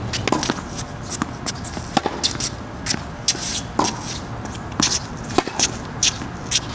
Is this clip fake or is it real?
real